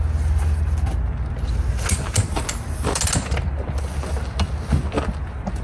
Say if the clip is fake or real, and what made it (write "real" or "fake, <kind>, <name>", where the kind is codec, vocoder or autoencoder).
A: real